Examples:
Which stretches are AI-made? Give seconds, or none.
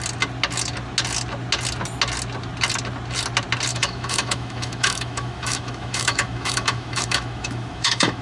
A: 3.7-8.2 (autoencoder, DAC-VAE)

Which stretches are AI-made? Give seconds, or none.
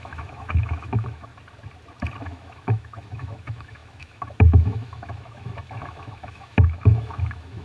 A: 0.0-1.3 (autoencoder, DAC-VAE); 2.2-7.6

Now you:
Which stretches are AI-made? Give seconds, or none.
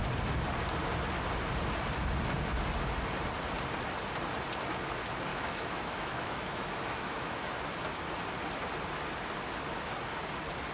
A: 5.3-7.6 (autoencoder, DAC-VAE)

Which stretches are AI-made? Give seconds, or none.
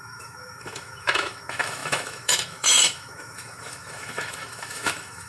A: 0.0-5.3 (autoencoder, DAC-VAE)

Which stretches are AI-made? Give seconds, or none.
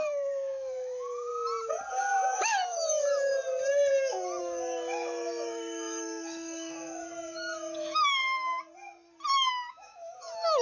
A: 0.0-1.3 (autoencoder, DAC-VAE); 1.9-3.3; 4.4-8.2; 9.5-10.6